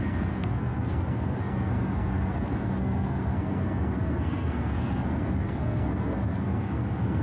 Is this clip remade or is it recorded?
remade